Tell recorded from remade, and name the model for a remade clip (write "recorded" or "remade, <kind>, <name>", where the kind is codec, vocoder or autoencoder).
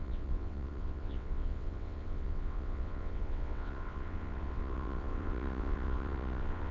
remade, vocoder, WaveNeXt